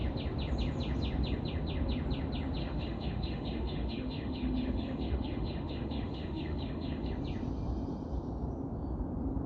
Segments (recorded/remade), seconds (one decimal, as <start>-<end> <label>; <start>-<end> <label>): 0.0-2.6 recorded; 2.6-7.1 remade; 7.1-9.5 recorded